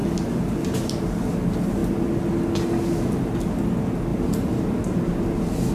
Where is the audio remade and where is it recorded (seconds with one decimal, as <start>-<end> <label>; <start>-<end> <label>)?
0.0-5.7 recorded